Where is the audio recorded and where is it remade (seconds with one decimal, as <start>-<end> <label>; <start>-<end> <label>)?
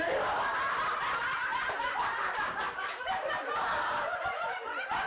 0.0-1.5 recorded; 1.5-4.6 remade; 4.6-5.1 recorded